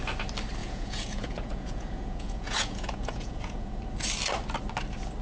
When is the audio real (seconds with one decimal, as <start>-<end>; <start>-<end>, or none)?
0.0-0.6; 3.7-5.2